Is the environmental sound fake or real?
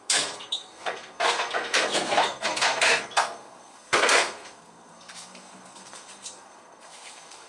fake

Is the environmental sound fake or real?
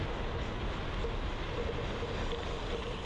real